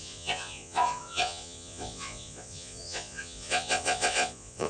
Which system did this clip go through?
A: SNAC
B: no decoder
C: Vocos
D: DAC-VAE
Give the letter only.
C